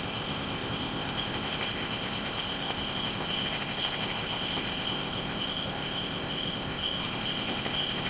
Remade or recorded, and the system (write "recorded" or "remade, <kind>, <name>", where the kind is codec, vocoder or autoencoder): remade, codec, ZipCodec